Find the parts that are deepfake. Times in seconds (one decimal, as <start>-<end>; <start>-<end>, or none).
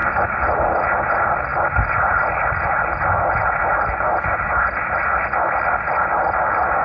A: none